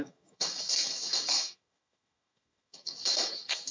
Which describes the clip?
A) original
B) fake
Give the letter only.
B